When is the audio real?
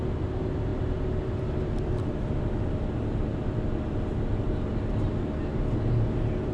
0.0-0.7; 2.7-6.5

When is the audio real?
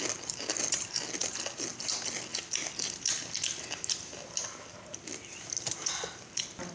0.0-6.7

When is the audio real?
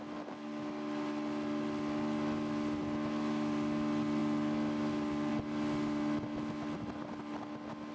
0.0-7.9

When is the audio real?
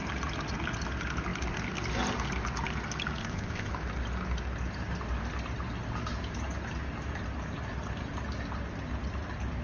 0.0-3.2; 3.7-9.6